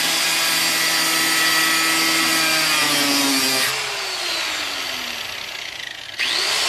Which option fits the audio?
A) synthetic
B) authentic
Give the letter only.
B